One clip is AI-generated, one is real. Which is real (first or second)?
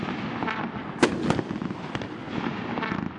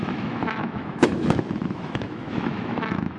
first